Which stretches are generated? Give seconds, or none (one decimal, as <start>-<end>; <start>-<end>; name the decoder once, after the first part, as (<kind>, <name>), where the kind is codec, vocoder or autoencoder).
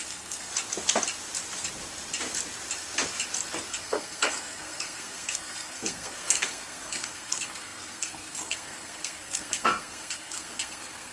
0.0-0.5 (codec, SNAC); 3.7-11.1